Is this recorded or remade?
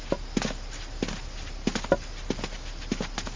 recorded